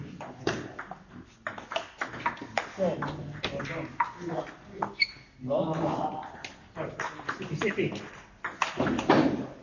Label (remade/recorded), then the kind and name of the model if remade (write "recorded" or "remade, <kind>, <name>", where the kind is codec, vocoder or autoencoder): recorded